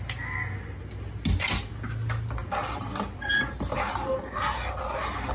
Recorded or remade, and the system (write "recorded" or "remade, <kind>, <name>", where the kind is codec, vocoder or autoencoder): recorded